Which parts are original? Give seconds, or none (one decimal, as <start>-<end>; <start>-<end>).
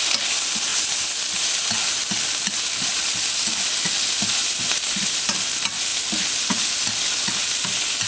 0.0-8.1